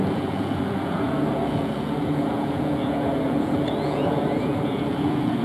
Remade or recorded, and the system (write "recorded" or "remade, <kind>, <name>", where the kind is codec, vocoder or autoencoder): remade, vocoder, Vocos